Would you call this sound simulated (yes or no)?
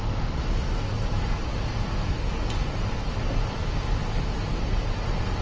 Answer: no